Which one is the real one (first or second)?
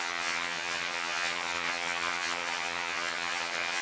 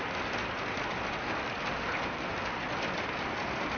second